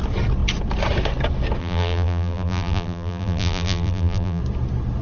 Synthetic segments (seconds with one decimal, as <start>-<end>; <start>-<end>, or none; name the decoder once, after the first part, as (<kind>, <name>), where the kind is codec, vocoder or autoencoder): 1.6-4.4 (vocoder, BigVGAN v2)